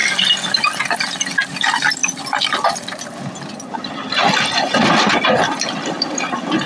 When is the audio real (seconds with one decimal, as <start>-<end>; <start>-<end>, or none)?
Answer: 0.0-1.5; 2.0-3.8

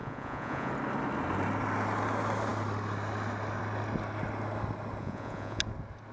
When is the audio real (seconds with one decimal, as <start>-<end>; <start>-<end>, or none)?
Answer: 0.7-5.0; 5.6-6.1